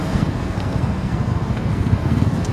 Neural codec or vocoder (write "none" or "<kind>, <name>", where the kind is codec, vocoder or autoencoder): codec, SNAC